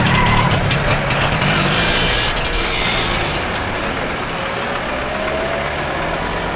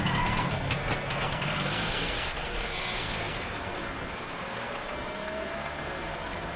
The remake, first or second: second